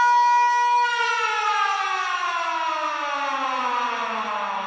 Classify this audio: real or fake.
real